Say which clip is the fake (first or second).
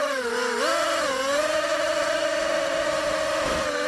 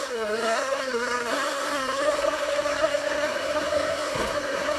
second